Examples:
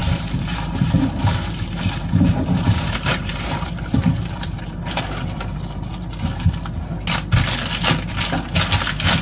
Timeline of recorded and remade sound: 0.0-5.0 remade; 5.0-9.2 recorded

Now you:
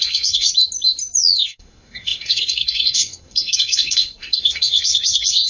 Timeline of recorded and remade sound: 0.0-0.5 remade; 0.5-1.4 recorded; 1.4-5.5 remade

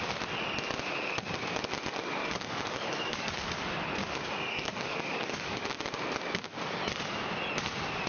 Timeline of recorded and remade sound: 0.0-2.2 recorded; 2.2-3.6 remade; 3.6-4.0 recorded; 4.0-5.7 remade; 5.7-8.1 recorded

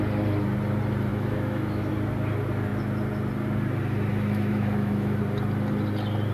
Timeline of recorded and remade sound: 0.0-1.1 recorded; 1.1-1.9 remade; 1.9-4.1 recorded; 4.1-5.2 remade; 5.2-6.3 recorded

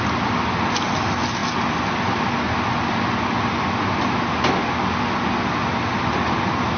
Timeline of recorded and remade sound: 0.0-6.8 recorded

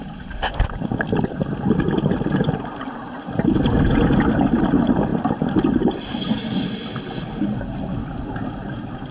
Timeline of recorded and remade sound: 0.0-9.1 recorded

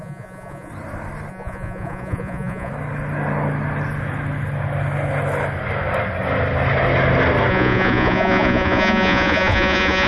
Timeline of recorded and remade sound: 0.0-0.7 remade; 0.7-1.3 recorded; 1.3-2.7 remade; 2.7-7.5 recorded; 7.5-10.1 remade

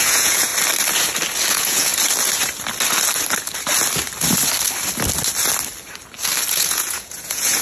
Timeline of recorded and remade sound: 0.0-0.5 remade; 0.5-1.5 recorded; 1.5-1.9 remade; 1.9-6.5 recorded; 6.5-7.6 remade